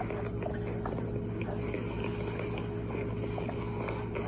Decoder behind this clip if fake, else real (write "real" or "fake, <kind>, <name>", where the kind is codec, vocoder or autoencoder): real